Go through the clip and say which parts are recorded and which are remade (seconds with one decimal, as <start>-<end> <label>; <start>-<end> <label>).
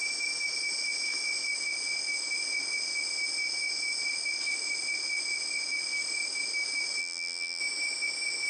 0.0-7.0 recorded; 7.0-7.6 remade; 7.6-8.5 recorded